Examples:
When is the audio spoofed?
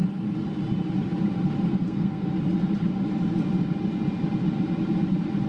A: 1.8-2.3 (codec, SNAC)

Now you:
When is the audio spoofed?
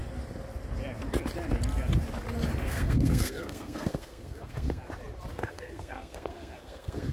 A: 2.6-4.8 (codec, SNAC); 5.3-7.1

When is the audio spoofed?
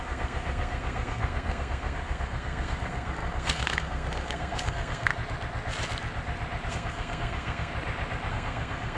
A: 0.0-5.1 (codec, SNAC); 6.7-7.7; 8.3-9.0